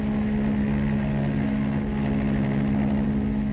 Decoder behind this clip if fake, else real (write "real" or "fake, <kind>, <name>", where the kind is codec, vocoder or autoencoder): real